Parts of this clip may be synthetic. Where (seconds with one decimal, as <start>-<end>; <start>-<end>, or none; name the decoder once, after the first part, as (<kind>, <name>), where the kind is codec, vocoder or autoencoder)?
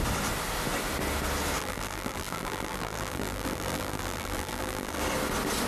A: 1.6-5.0 (vocoder, BigVGAN v2)